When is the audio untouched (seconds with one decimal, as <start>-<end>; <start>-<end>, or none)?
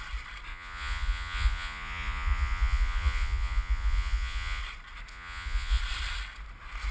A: 0.0-0.5; 4.6-5.1; 5.8-6.9